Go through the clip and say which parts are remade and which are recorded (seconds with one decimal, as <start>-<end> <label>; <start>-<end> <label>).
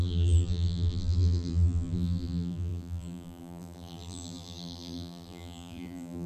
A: 0.0-6.3 remade